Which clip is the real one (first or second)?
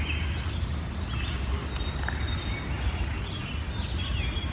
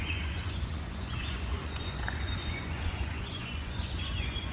first